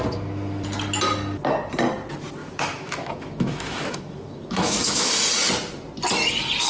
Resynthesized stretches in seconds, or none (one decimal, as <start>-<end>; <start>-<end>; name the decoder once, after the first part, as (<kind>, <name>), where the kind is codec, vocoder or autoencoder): 2.4-5.1 (autoencoder, DAC-VAE)